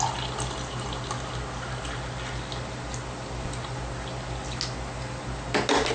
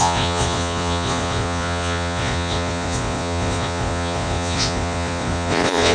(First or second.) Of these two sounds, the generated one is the second